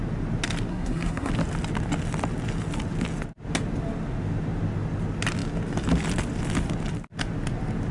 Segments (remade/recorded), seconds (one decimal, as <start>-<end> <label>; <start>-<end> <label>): 0.0-0.7 recorded; 0.7-1.3 remade; 1.3-7.9 recorded